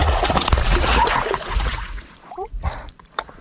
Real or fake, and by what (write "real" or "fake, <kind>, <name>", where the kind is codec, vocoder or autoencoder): fake, vocoder, Vocos